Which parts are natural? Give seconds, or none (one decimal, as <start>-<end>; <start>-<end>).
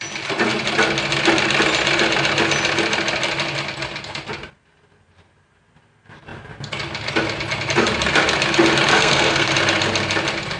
0.0-8.9; 9.5-10.6